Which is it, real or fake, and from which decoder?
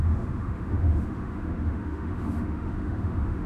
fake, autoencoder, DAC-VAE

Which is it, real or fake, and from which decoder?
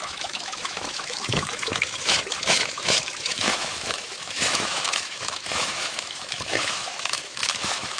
fake, autoencoder, DAC-VAE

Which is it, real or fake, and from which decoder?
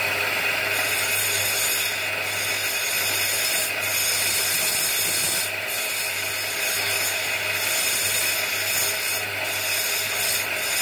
real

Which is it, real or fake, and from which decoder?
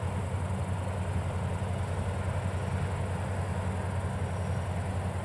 real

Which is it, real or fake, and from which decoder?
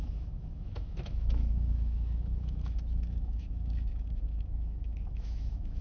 fake, autoencoder, DAC-VAE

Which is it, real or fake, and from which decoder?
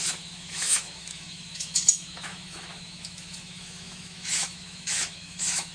fake, autoencoder, DAC-VAE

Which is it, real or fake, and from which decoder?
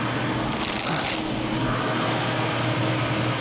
real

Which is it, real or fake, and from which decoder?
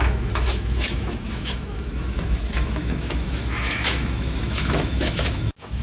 fake, autoencoder, DAC-VAE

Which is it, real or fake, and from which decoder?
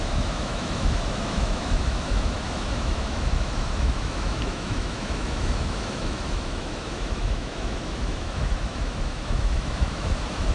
fake, autoencoder, DAC-VAE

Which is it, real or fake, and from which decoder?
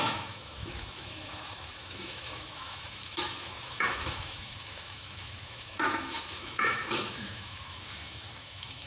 fake, autoencoder, DAC-VAE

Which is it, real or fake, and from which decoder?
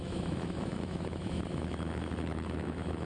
fake, autoencoder, DAC-VAE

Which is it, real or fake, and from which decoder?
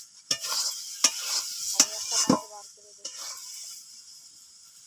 real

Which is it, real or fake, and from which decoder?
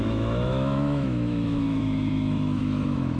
fake, autoencoder, DAC-VAE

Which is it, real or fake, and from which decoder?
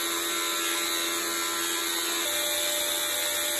real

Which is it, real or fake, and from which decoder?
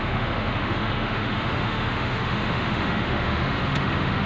fake, autoencoder, DAC-VAE